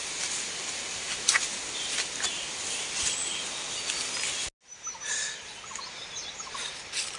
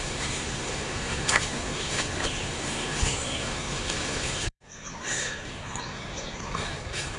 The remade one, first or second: second